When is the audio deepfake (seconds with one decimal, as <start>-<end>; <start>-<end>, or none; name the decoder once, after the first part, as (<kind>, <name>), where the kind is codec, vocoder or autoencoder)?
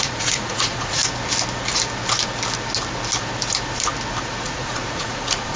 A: 0.0-1.0 (vocoder, Vocos); 4.4-5.6